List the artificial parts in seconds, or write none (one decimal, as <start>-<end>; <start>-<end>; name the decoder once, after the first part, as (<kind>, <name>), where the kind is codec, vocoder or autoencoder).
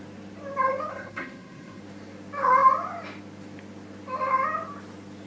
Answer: 0.9-1.8 (codec, SNAC)